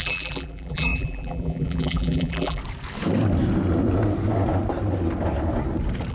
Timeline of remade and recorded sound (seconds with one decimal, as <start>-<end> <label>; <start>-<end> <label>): 0.0-2.6 remade; 2.6-6.1 recorded